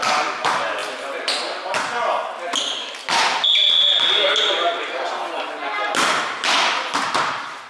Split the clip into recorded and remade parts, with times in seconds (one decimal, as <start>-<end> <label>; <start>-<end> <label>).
0.0-7.7 recorded